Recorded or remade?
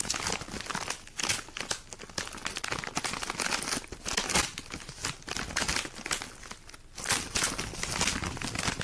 recorded